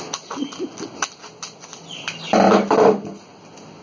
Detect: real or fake real